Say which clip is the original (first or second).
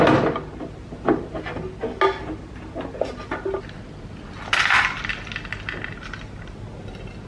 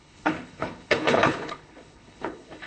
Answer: first